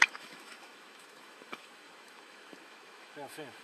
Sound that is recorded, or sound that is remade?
remade